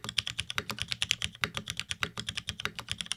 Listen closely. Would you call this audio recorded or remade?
recorded